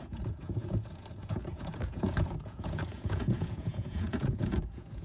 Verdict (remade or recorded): remade